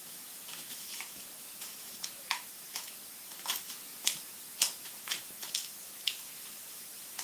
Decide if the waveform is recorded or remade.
remade